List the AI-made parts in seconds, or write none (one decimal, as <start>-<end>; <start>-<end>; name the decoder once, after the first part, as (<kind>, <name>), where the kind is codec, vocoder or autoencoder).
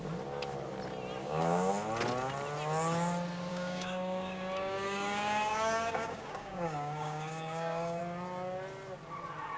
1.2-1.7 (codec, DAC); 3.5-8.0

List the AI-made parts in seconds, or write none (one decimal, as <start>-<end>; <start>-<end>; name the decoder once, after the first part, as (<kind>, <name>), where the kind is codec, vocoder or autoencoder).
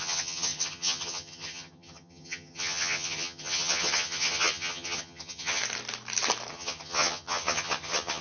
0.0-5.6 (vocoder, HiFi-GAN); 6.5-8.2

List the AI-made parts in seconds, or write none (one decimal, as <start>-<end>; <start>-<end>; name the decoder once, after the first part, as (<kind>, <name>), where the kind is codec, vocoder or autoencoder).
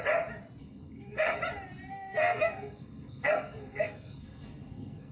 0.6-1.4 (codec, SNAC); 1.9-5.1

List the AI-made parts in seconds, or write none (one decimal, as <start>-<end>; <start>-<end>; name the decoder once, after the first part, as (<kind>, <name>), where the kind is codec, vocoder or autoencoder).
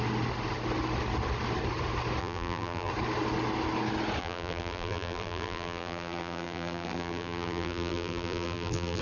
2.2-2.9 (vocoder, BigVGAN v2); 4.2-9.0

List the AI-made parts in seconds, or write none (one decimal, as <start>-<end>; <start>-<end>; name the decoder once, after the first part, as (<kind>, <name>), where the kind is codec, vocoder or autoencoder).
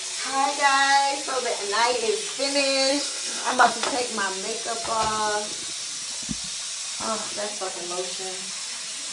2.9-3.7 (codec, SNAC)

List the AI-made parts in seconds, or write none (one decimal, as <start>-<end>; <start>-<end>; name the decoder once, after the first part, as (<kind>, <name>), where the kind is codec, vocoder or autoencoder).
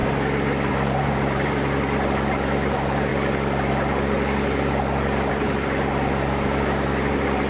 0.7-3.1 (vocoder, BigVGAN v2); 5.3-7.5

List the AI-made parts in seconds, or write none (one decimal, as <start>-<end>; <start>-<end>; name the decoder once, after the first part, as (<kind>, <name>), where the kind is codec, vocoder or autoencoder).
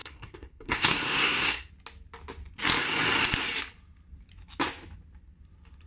0.0-1.7 (codec, SNAC)